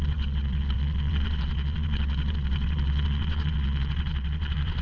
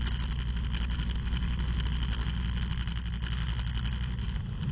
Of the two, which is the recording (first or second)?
second